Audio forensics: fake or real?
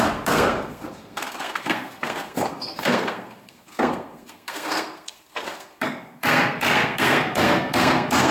fake